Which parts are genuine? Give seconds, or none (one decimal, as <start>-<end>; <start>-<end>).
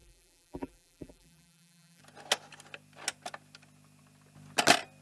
2.0-5.0